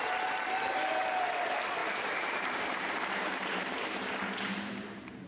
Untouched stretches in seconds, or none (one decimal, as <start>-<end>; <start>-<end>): 0.0-1.8